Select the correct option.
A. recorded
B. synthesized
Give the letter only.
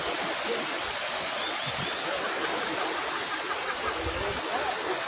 A